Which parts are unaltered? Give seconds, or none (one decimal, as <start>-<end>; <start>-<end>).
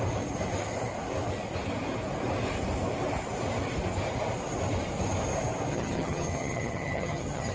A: 0.0-5.7